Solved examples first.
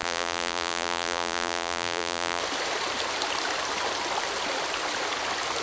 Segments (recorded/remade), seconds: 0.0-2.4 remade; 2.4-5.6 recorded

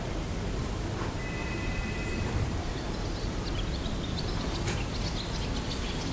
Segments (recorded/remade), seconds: 0.0-1.4 recorded; 1.4-2.8 remade; 2.8-3.5 recorded; 3.5-4.3 remade; 4.3-6.1 recorded

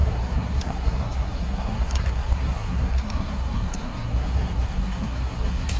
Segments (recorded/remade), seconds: 0.0-5.8 remade

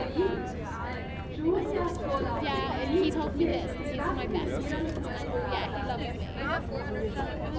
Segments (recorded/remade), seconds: 0.0-7.6 recorded

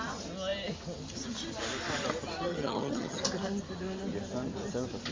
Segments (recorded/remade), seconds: 0.0-2.5 recorded; 2.5-3.2 remade; 3.2-5.1 recorded

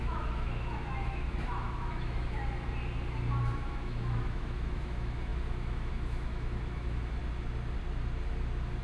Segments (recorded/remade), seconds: 0.0-2.4 remade; 2.4-3.4 recorded; 3.4-7.2 remade; 7.2-8.8 recorded

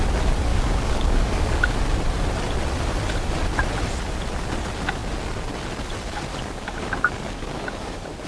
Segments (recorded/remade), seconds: 0.0-0.5 recorded; 0.5-1.8 remade; 1.8-6.3 recorded; 6.3-8.3 remade